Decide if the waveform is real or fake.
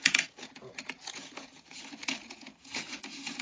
fake